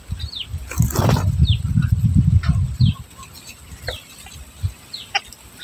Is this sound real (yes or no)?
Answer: yes